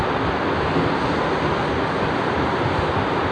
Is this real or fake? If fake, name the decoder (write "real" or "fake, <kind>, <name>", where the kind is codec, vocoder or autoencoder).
real